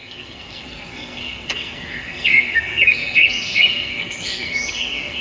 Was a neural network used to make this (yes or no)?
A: yes